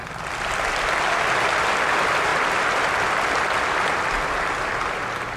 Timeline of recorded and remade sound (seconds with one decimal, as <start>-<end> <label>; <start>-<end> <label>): 0.0-2.3 recorded; 2.3-3.5 remade; 3.5-5.4 recorded